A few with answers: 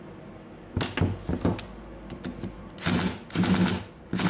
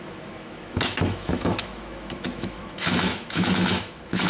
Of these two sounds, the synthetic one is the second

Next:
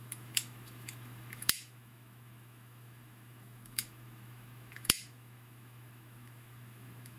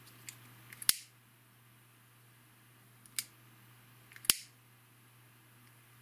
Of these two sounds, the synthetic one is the first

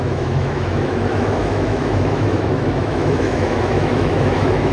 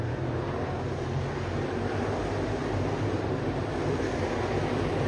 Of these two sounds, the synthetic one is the first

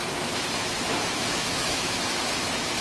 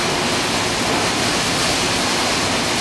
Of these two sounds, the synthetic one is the first